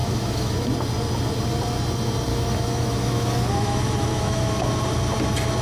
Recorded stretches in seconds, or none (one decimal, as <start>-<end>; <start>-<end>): 0.7-2.3; 4.6-5.6